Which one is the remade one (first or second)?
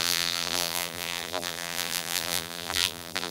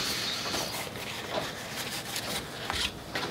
first